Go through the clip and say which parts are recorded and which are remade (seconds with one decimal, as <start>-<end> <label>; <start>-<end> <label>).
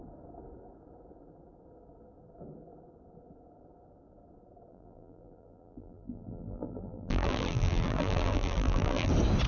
0.0-4.7 recorded; 4.7-9.1 remade; 9.1-9.5 recorded